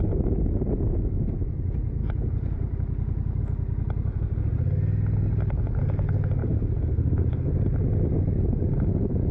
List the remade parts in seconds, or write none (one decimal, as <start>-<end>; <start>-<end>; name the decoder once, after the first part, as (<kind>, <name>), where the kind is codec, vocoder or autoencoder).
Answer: 6.4-7.5 (codec, DAC)

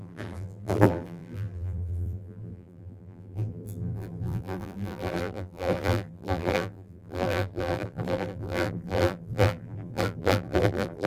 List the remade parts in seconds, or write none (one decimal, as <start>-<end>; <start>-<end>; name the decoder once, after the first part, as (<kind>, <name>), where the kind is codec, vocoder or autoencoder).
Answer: 0.0-11.1 (vocoder, BigVGAN v2)

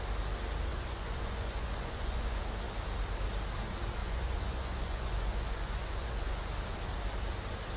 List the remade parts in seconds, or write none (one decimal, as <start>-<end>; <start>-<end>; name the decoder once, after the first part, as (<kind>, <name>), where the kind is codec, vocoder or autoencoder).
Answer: 0.7-2.4 (vocoder, Vocos); 4.0-6.5

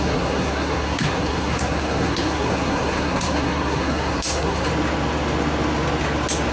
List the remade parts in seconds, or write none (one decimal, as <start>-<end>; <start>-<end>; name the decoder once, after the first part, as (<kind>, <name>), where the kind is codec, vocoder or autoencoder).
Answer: 0.0-4.7 (codec, SNAC)

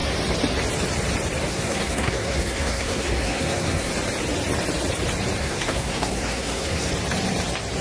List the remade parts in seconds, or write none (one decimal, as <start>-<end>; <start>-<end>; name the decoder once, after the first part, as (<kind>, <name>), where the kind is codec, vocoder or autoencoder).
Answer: 1.5-3.9 (codec, SNAC); 5.4-6.9

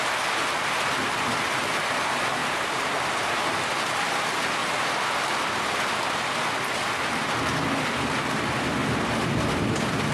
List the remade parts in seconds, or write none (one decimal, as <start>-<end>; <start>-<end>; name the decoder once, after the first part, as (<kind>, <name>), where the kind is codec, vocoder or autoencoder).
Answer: none

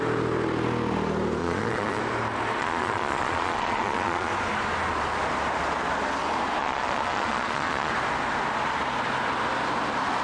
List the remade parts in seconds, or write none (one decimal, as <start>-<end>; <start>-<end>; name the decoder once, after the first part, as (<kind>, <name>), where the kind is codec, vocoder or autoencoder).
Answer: 1.4-2.0 (vocoder, Vocos); 2.6-4.3; 6.6-7.9